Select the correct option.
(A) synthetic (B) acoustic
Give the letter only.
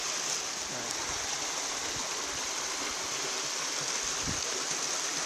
B